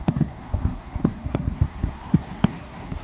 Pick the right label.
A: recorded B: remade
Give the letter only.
B